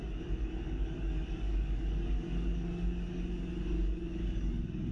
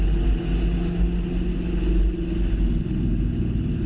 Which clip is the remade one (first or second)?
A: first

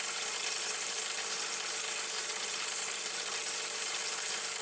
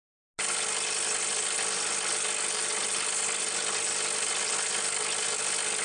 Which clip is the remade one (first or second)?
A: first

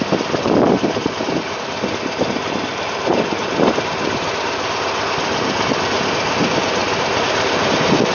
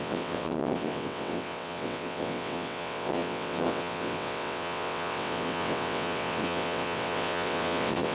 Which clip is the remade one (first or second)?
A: second